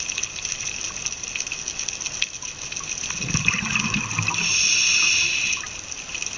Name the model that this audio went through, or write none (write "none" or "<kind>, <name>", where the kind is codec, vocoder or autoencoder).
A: none